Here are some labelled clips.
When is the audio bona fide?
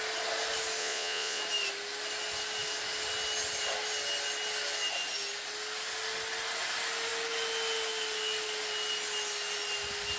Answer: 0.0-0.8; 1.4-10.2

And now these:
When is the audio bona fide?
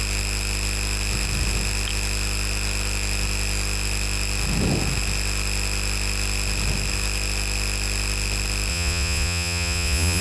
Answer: 0.0-8.7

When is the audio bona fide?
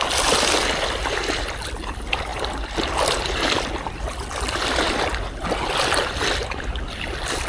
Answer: 0.0-7.5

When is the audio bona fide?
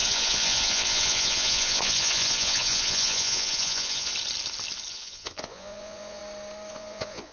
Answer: 4.1-4.9; 6.2-6.7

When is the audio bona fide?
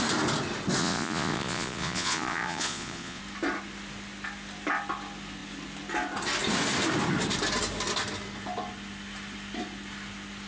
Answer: 0.0-0.8; 3.2-10.5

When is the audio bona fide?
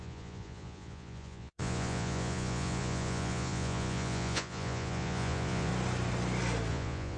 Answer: 5.7-6.7